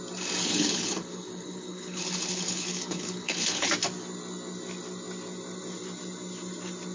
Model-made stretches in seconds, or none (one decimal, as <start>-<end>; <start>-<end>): 0.4-3.7